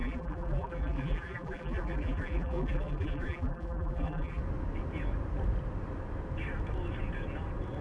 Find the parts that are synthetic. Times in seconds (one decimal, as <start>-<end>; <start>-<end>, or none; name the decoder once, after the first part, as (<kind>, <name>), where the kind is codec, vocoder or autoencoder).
0.0-4.4 (vocoder, BigVGAN v2)